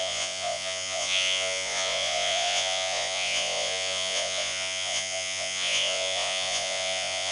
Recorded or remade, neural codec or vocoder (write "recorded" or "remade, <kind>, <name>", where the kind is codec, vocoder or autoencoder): remade, vocoder, Vocos